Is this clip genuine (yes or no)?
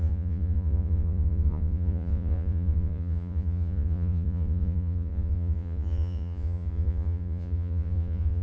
no